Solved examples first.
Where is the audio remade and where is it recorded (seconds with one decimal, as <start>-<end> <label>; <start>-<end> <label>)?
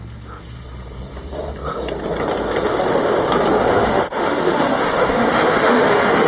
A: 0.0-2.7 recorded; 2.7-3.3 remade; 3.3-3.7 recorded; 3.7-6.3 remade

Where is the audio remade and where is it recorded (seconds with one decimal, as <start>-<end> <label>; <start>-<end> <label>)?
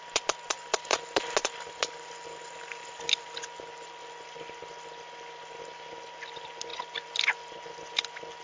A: 0.0-8.4 recorded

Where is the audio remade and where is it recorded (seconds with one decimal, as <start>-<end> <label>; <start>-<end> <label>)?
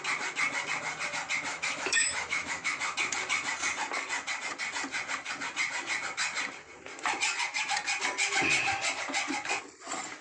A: 0.0-1.5 recorded; 1.5-2.8 remade; 2.8-10.2 recorded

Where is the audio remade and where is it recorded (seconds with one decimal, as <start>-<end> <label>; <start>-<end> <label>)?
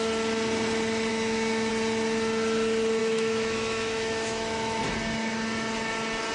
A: 0.0-1.1 recorded; 1.1-1.7 remade; 1.7-3.0 recorded; 3.0-4.8 remade; 4.8-6.3 recorded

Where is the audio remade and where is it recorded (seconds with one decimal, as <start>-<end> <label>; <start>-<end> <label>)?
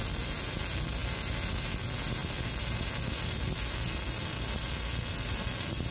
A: 0.0-5.9 recorded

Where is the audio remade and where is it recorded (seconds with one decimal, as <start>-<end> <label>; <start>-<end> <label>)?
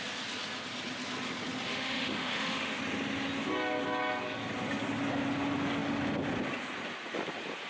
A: 0.0-1.7 recorded; 1.7-2.8 remade; 2.8-7.7 recorded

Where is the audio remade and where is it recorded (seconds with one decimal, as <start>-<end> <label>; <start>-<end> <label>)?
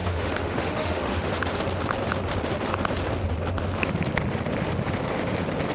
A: 0.0-1.3 remade; 1.3-5.7 recorded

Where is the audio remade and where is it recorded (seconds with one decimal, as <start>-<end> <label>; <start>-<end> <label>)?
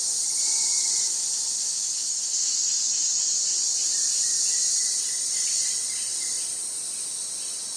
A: 0.0-1.7 recorded; 1.7-3.2 remade; 3.2-7.8 recorded